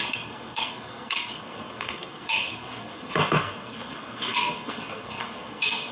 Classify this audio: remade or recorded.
remade